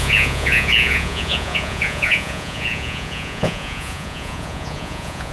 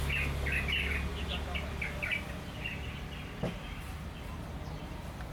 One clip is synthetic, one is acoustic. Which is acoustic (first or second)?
second